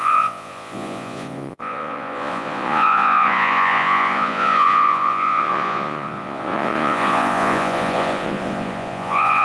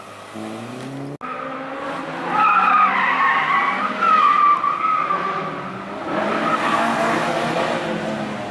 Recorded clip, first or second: second